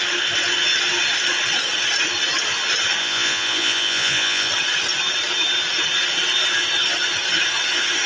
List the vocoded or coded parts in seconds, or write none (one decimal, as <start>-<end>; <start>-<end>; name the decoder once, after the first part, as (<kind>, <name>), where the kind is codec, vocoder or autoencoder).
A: 3.0-4.5 (vocoder, Vocos)